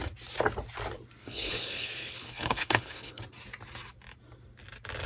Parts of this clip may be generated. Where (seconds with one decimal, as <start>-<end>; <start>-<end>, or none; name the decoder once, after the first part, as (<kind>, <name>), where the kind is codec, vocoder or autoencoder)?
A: 1.2-3.2 (codec, HILCodec)